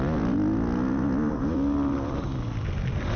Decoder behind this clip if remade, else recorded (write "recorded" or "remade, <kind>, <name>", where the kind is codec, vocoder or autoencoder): recorded